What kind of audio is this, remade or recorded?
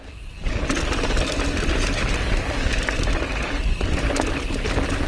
recorded